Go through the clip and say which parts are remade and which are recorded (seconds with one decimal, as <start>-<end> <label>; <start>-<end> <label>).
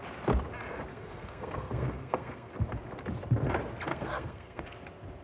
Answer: 0.0-0.9 recorded; 0.9-2.5 remade; 2.5-3.9 recorded; 3.9-4.6 remade; 4.6-5.2 recorded